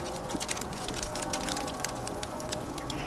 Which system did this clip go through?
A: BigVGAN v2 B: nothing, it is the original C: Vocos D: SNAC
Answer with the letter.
C